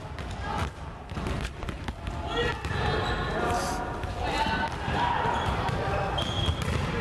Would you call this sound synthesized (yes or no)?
no